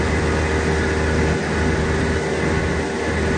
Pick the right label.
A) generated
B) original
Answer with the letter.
B